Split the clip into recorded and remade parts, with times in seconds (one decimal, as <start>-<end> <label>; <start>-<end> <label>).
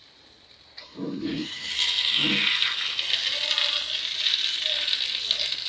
0.0-0.8 recorded; 0.8-1.7 remade; 1.7-5.7 recorded